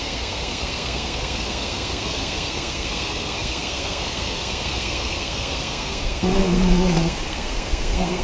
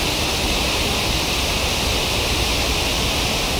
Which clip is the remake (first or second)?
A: first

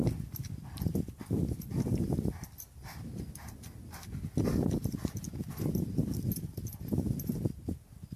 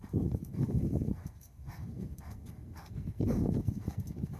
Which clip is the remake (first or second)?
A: second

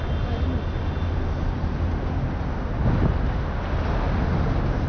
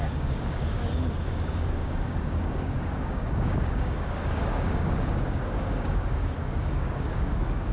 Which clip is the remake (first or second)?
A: second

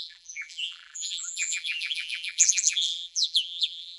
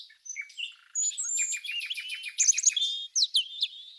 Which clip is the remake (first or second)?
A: first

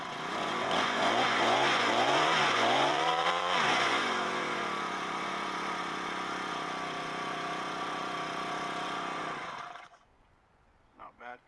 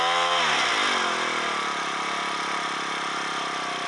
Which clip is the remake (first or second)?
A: first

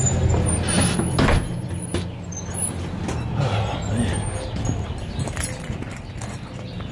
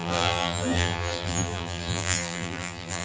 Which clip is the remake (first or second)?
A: second